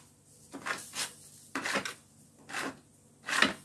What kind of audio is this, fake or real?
real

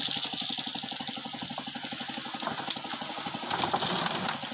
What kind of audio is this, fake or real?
real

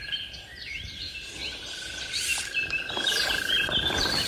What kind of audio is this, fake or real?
fake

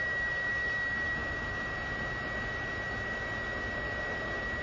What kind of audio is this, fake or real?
real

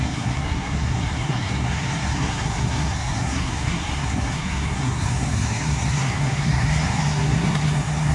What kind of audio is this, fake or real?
fake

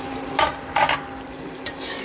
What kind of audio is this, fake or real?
fake